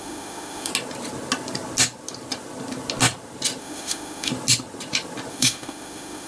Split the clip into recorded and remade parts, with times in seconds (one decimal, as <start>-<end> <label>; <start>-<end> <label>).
0.0-0.7 remade; 0.7-3.6 recorded; 3.6-4.3 remade; 4.3-5.3 recorded; 5.3-6.3 remade